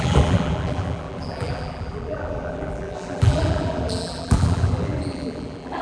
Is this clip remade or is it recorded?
remade